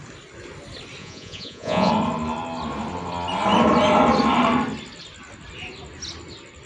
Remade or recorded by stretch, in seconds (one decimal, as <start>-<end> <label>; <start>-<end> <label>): 0.0-1.0 recorded; 1.0-1.9 remade; 1.9-6.7 recorded